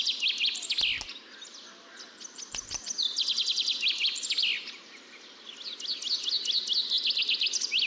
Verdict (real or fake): real